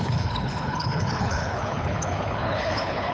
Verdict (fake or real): fake